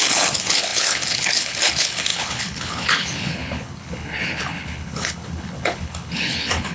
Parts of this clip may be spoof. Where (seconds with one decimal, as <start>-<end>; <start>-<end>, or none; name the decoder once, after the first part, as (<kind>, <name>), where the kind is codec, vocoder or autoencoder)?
0.0-6.7 (codec, HILCodec)